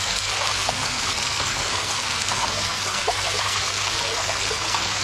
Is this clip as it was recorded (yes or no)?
no